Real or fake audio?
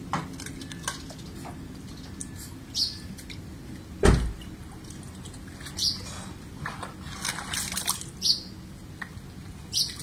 real